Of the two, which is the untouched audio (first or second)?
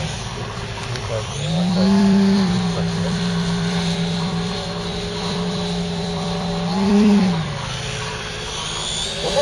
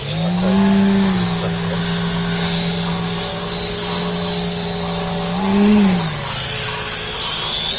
second